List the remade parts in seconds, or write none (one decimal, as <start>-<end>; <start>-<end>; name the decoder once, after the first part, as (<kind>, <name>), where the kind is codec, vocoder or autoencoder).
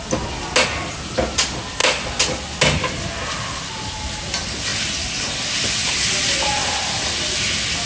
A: none